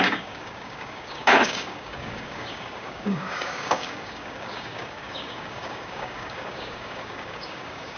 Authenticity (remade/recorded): remade